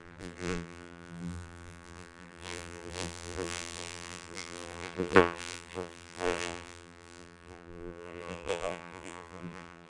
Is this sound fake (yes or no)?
yes